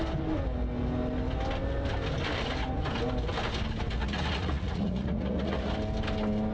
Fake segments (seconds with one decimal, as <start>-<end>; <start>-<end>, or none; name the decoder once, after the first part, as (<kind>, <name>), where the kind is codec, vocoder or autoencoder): 4.0-5.7 (vocoder, Vocos)